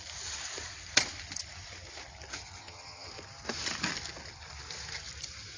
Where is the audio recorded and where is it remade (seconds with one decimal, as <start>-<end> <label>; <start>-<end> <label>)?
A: 0.0-2.6 recorded; 2.6-3.1 remade; 3.1-5.6 recorded